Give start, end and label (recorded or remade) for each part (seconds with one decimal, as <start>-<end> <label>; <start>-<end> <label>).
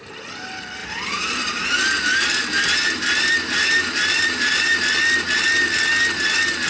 0.0-0.8 recorded; 0.8-4.8 remade; 4.8-6.7 recorded